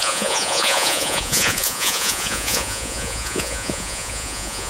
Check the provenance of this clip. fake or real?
fake